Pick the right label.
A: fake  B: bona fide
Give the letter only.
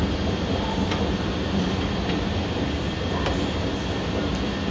B